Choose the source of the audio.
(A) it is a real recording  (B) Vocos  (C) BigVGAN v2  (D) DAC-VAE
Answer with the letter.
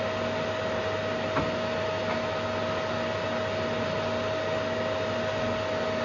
A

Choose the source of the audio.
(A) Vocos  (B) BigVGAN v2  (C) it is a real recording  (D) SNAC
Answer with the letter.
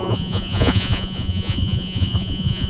A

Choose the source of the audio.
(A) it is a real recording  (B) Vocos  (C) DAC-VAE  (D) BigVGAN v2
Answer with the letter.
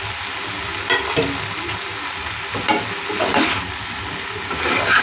A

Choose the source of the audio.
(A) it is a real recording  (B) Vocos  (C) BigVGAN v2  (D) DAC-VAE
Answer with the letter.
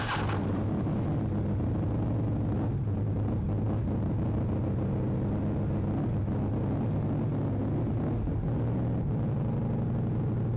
A